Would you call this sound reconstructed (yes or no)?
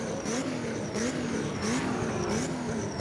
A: no